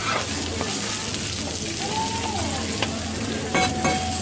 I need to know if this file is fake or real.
real